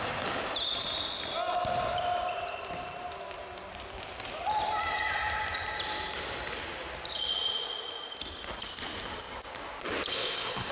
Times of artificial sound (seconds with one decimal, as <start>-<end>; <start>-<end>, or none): 10.1-10.7